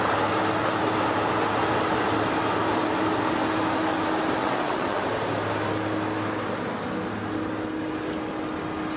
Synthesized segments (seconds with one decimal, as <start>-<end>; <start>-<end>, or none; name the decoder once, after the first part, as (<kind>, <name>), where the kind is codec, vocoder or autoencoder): 4.4-5.0 (vocoder, WaveNeXt)